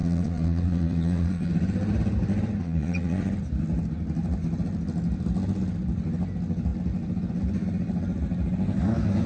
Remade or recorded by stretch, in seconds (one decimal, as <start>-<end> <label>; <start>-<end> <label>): 0.0-1.5 remade; 1.5-2.6 recorded; 2.6-3.3 remade; 3.3-9.3 recorded